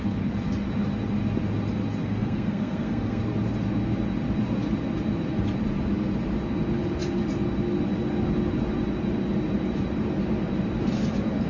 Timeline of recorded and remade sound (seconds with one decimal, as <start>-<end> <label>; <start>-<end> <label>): 0.0-2.0 recorded; 2.0-3.2 remade; 3.2-11.5 recorded